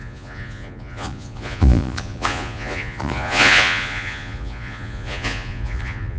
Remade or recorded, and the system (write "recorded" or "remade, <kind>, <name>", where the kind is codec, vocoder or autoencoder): remade, vocoder, Vocos